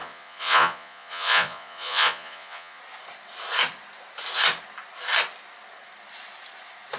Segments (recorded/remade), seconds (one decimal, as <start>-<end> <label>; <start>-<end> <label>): 0.0-2.8 remade; 2.8-7.0 recorded